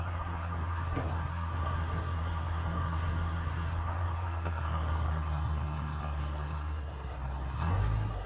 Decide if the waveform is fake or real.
fake